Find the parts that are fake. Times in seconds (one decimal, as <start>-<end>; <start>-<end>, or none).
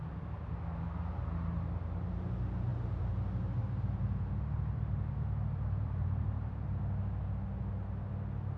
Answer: 2.7-6.8